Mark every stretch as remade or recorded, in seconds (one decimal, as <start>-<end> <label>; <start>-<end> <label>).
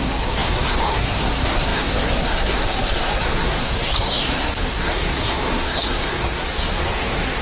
0.0-7.4 remade